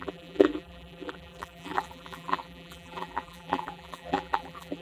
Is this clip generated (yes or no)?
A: yes